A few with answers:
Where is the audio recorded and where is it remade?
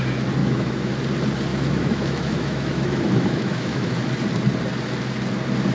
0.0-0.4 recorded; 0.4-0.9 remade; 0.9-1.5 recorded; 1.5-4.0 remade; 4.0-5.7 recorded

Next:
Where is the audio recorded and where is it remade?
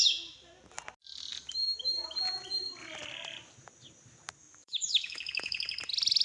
0.0-4.4 recorded; 4.4-5.6 remade; 5.6-6.2 recorded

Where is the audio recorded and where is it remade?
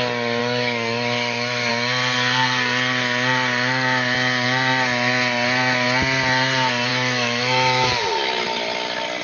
0.0-0.4 recorded; 0.4-1.7 remade; 1.7-6.9 recorded; 6.9-7.9 remade; 7.9-9.2 recorded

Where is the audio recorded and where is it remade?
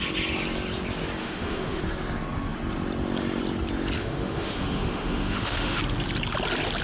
0.0-1.2 recorded; 1.2-1.8 remade; 1.8-4.0 recorded; 4.0-5.8 remade; 5.8-6.8 recorded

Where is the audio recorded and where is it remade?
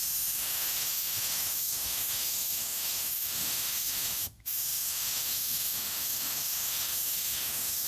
0.0-7.9 remade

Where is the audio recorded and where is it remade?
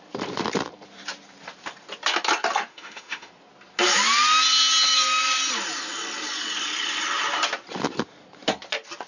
0.0-2.7 recorded; 2.7-3.3 remade; 3.3-9.1 recorded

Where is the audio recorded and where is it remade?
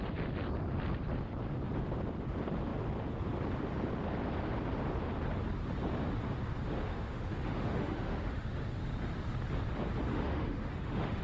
0.0-6.9 recorded; 6.9-8.8 remade; 8.8-10.1 recorded; 10.1-11.2 remade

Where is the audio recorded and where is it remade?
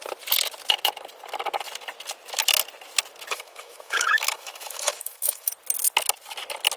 0.0-3.3 recorded; 3.3-5.5 remade; 5.5-6.8 recorded